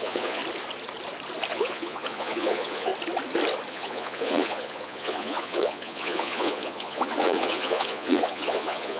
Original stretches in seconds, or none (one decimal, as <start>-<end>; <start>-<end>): 0.4-1.5; 2.9-3.7